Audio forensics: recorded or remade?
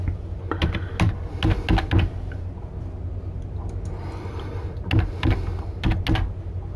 recorded